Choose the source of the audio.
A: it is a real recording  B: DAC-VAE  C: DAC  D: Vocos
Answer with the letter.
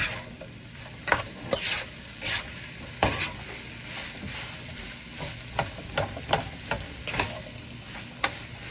A